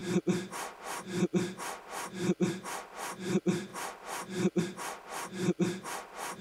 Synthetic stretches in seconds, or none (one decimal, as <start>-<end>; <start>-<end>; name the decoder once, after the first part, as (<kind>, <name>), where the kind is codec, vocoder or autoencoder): 2.5-6.4 (vocoder, BigVGAN v2)

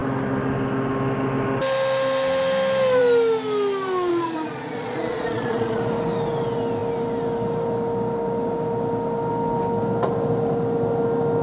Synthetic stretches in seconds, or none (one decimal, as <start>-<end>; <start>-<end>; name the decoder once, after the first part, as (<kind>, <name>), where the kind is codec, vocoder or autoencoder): 4.1-5.8 (vocoder, Vocos)

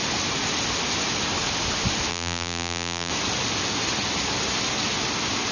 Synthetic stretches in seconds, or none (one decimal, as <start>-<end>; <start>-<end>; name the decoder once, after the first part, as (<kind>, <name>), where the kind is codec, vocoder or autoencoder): 2.1-3.1 (vocoder, BigVGAN v2)

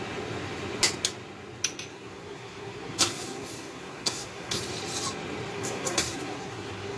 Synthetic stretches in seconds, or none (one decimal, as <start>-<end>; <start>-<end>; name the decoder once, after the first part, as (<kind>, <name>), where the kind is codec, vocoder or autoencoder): 1.9-4.6 (codec, SNAC); 5.5-7.0